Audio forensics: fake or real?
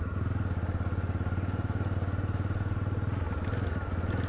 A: real